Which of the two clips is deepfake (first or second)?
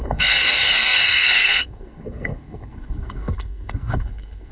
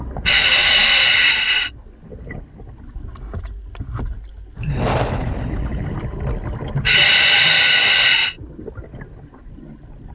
first